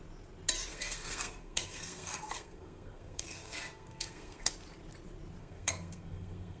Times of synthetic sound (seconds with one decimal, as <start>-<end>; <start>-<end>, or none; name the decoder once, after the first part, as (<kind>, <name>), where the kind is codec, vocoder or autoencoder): 0.7-4.5 (codec, SNAC); 5.4-6.6